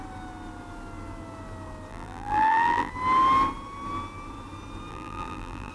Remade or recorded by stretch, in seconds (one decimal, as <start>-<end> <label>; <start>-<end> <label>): 0.0-1.9 recorded; 1.9-2.9 remade; 2.9-4.9 recorded; 4.9-5.7 remade

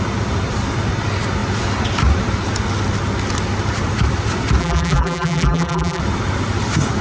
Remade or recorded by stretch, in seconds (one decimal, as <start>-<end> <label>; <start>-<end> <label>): 0.0-4.6 recorded; 4.6-6.0 remade; 6.0-7.0 recorded

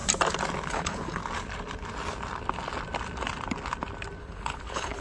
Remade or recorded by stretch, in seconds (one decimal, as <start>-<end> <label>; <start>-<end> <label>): 0.0-0.7 recorded; 0.7-1.2 remade; 1.2-4.2 recorded; 4.2-5.0 remade